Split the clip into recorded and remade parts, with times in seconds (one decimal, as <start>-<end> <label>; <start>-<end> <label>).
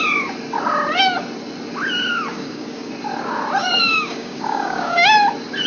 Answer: 0.0-2.3 recorded; 2.3-2.9 remade; 2.9-3.6 recorded; 3.6-5.1 remade; 5.1-5.7 recorded